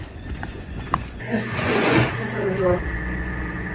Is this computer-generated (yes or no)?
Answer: yes